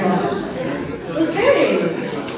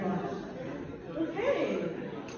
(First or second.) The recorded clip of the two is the second